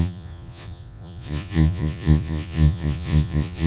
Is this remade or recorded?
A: remade